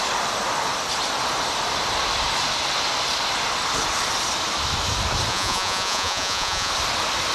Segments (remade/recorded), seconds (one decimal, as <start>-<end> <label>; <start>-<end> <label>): 0.0-5.3 recorded; 5.3-6.7 remade; 6.7-7.3 recorded

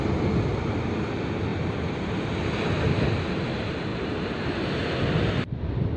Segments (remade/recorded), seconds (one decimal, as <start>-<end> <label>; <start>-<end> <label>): 0.0-3.9 recorded; 3.9-4.7 remade; 4.7-6.0 recorded

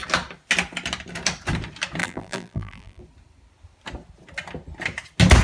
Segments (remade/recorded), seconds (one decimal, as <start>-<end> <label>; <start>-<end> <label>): 0.0-2.0 recorded; 2.0-3.0 remade; 3.0-5.4 recorded

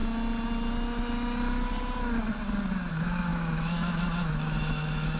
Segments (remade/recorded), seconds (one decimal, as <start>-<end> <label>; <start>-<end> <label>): 0.0-2.9 recorded; 2.9-5.2 remade

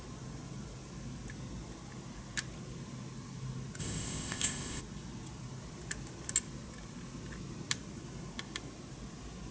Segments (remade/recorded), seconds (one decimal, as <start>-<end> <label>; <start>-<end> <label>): 0.0-3.8 recorded; 3.8-4.8 remade; 4.8-9.5 recorded

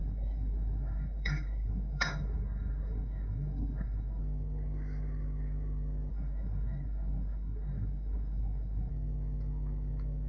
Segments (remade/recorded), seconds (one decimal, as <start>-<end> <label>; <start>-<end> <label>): 0.0-4.2 remade; 4.2-6.1 recorded; 6.1-8.9 remade; 8.9-10.3 recorded